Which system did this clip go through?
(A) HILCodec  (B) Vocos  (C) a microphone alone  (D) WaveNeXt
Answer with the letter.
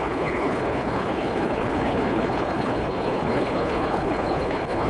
A